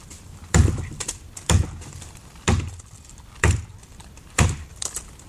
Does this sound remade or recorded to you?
remade